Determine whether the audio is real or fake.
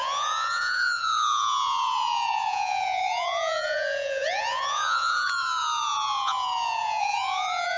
fake